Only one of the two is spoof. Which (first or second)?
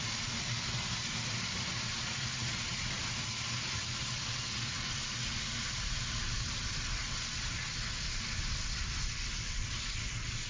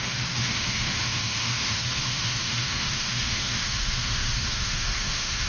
second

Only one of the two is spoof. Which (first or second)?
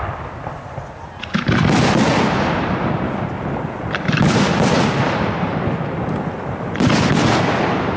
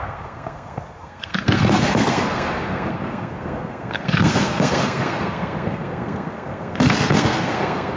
second